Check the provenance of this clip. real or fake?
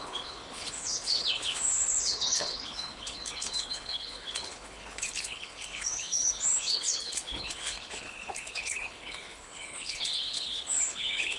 fake